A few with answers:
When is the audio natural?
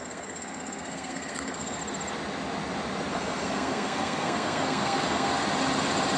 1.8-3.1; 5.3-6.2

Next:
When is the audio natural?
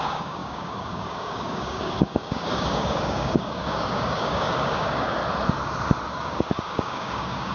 5.2-6.2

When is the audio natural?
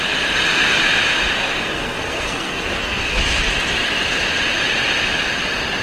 0.0-1.4; 3.2-5.8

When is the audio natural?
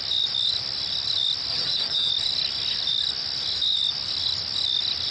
0.0-1.5; 2.1-5.1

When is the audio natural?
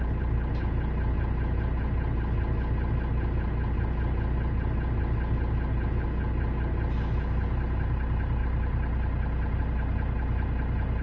0.0-11.0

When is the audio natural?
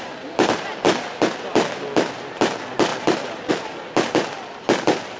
0.0-5.2